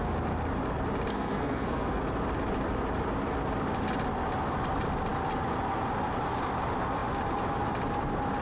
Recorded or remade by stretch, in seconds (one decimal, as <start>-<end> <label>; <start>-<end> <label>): 0.0-1.1 recorded; 1.1-2.0 remade; 2.0-8.4 recorded